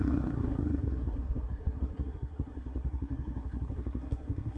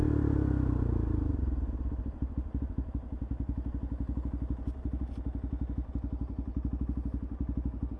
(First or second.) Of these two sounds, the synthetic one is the first